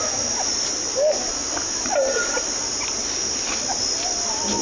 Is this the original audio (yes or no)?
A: yes